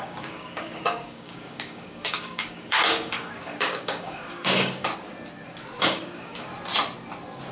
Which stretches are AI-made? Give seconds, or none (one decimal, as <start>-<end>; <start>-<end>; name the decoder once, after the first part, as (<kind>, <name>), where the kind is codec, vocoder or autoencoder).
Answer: 0.0-4.9 (codec, DAC); 5.8-6.5